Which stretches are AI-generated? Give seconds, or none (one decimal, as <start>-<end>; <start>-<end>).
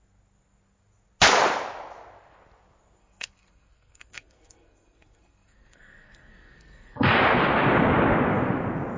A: 3.0-7.2